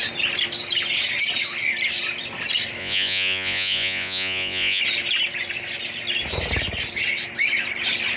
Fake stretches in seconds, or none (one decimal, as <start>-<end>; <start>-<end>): 2.8-4.8